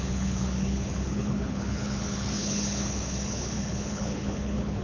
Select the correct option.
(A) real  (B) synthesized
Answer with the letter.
B